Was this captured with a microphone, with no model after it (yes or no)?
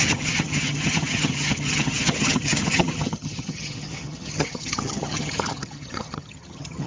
no